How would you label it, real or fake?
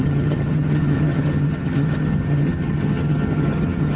fake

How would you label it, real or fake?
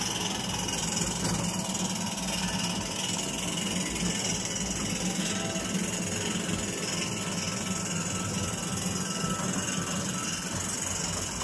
real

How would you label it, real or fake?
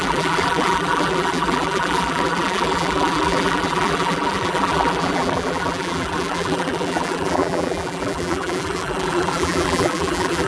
fake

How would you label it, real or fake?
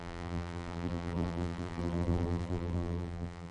fake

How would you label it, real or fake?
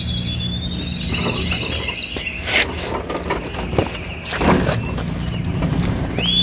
real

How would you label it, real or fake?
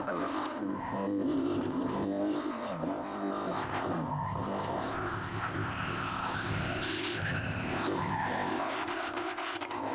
fake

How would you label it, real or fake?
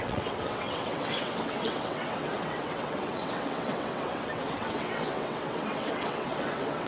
fake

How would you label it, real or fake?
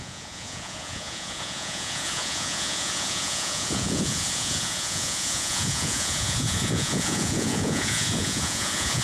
fake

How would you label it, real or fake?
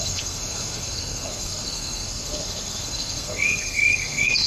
fake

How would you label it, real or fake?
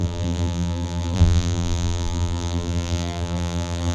fake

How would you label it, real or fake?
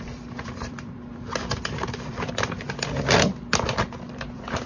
fake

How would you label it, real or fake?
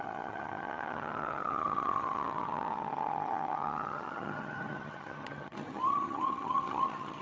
fake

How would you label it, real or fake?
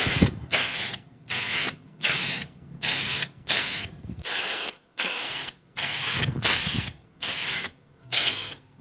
fake